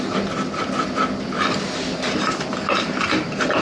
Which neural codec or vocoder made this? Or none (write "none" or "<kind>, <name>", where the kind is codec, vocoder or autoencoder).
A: none